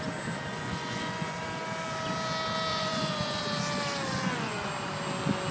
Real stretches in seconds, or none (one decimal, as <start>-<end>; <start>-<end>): 0.0-0.5; 1.4-2.7; 3.4-4.1; 4.7-5.5

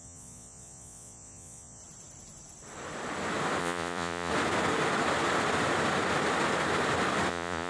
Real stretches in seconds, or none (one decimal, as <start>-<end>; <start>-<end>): 1.8-3.6; 4.3-7.3